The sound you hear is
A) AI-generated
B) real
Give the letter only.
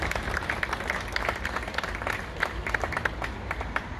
B